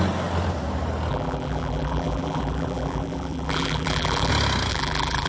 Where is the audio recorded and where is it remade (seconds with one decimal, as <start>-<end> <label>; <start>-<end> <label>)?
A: 0.0-1.1 recorded; 1.1-4.3 remade; 4.3-4.7 recorded; 4.7-5.3 remade